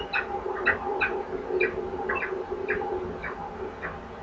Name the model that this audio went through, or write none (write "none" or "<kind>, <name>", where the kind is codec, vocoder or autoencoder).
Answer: none